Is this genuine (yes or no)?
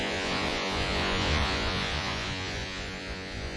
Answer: no